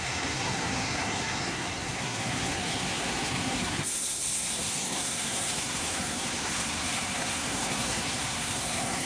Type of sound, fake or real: fake